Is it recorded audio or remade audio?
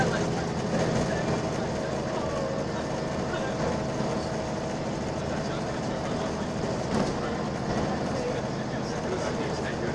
recorded